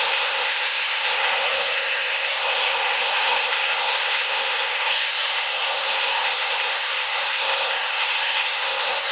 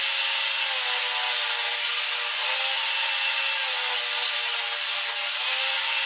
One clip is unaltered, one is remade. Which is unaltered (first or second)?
second